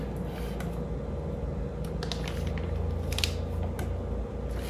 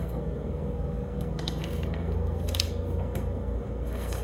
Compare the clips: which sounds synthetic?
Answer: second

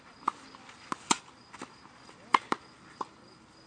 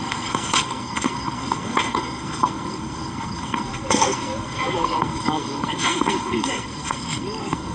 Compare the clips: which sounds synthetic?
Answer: second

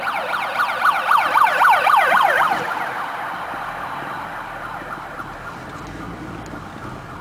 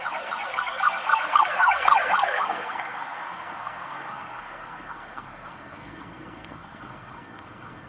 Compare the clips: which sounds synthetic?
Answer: second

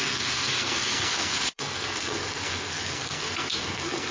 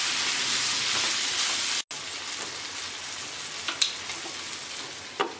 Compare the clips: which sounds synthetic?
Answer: first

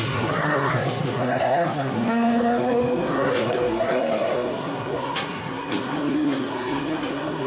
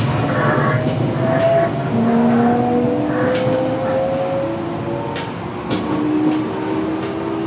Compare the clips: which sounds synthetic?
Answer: first